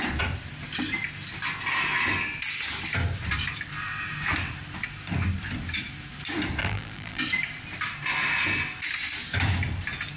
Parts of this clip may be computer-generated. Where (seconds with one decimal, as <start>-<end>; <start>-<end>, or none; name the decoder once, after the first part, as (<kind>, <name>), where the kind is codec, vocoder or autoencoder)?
6.6-7.2 (vocoder, BigVGAN v2)

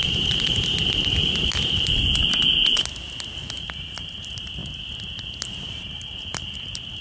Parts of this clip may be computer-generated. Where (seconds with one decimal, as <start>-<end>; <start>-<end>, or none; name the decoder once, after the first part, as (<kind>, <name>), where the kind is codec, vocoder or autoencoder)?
0.0-0.7 (vocoder, BigVGAN v2); 3.9-4.6; 5.3-7.0

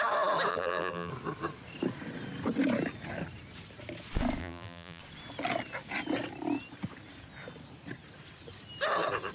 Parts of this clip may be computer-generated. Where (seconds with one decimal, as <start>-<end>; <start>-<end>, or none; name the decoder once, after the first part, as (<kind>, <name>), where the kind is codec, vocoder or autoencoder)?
0.5-1.1 (vocoder, BigVGAN v2); 4.4-5.0

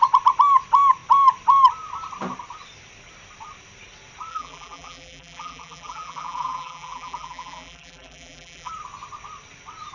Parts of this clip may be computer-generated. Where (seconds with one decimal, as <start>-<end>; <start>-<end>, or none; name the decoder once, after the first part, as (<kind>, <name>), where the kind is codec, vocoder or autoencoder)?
4.3-8.7 (vocoder, BigVGAN v2)